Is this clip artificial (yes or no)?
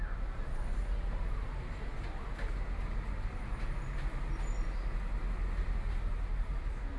no